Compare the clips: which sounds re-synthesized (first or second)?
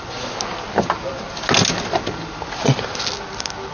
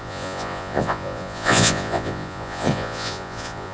second